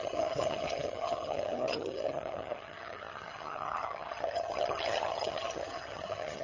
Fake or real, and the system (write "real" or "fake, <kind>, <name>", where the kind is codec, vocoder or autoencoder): fake, vocoder, HiFi-GAN